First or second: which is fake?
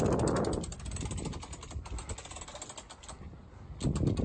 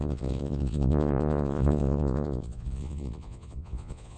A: second